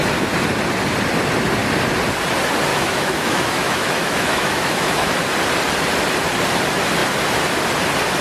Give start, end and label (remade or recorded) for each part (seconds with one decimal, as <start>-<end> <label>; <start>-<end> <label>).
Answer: 0.0-2.7 recorded; 2.7-5.1 remade; 5.1-8.2 recorded